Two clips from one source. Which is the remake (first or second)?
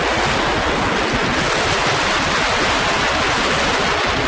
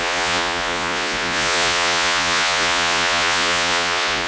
second